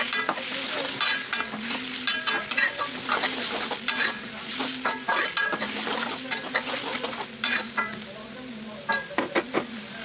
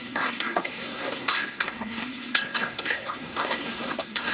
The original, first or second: first